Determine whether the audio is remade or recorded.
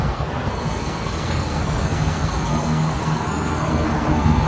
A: remade